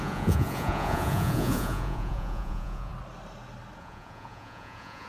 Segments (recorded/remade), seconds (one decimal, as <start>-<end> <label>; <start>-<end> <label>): 0.0-2.9 remade; 2.9-3.8 recorded; 3.8-5.1 remade